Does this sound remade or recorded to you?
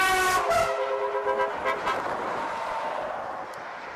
recorded